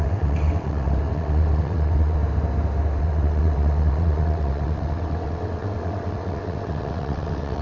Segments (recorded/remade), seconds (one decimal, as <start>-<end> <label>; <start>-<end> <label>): 0.0-2.2 remade; 2.2-3.0 recorded; 3.0-7.6 remade